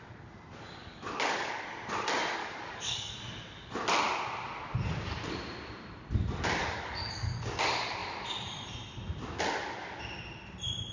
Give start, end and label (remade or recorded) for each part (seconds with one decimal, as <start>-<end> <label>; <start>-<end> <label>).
0.0-0.8 recorded; 0.8-1.6 remade; 1.6-2.4 recorded; 2.4-3.2 remade; 3.2-6.6 recorded; 6.6-7.6 remade; 7.6-10.9 recorded